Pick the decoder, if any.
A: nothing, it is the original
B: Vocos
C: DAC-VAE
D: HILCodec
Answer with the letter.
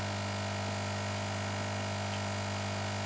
A